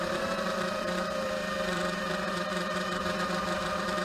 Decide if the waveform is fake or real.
fake